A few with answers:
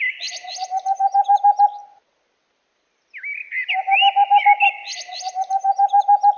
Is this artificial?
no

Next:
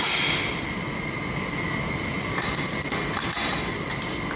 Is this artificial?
no